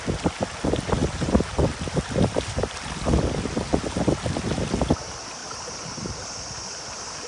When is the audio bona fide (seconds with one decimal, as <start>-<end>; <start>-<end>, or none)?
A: 0.0-7.3